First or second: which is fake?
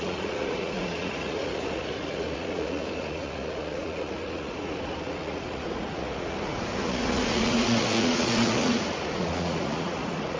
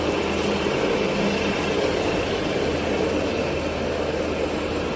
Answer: first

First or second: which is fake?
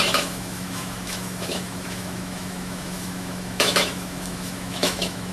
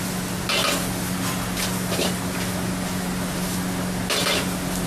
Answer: first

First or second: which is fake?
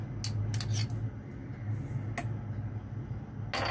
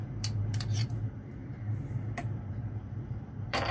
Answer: second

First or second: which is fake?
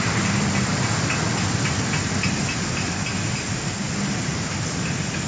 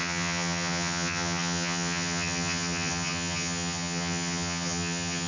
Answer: second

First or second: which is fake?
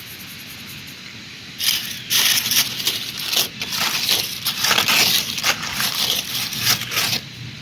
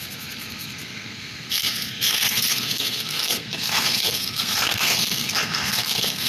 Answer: second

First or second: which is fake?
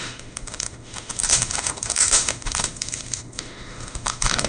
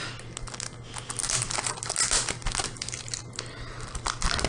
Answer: first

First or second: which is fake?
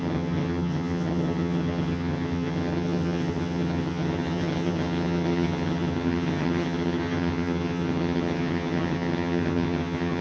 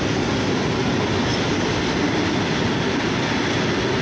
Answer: first